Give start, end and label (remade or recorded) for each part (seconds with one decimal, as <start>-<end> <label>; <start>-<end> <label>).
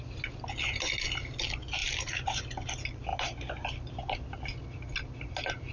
0.0-1.8 recorded; 1.8-2.4 remade; 2.4-5.7 recorded